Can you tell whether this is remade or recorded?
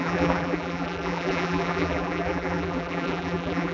remade